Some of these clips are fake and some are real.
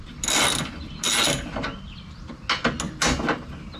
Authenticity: real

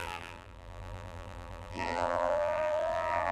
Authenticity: fake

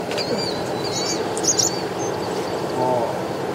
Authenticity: real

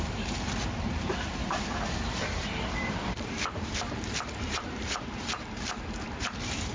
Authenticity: fake